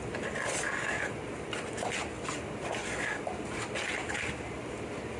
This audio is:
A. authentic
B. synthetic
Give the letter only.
A